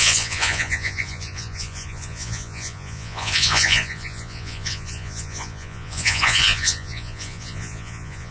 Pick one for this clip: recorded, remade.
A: remade